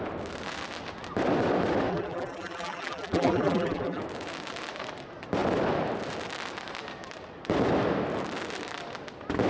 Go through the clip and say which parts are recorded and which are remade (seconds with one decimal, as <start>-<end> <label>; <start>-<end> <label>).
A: 0.0-1.9 recorded; 1.9-4.0 remade; 4.0-9.5 recorded